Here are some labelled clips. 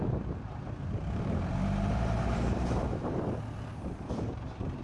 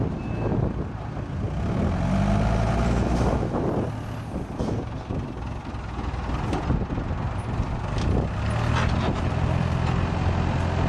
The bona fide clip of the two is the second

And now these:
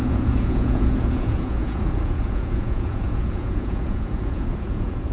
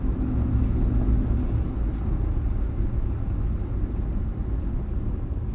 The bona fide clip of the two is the second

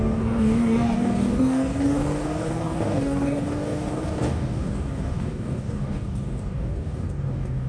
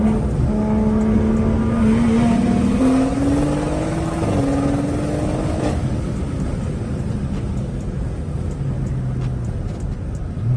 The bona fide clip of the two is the second